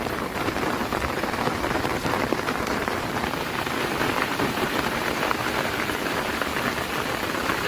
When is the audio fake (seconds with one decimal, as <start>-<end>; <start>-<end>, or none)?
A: 0.0-6.5; 7.2-7.7